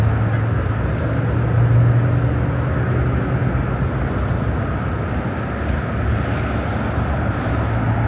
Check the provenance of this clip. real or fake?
real